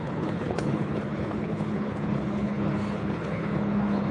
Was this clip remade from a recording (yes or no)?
yes